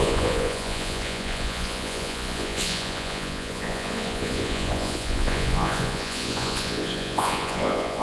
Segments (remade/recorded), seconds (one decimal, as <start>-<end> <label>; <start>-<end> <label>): 0.0-8.0 remade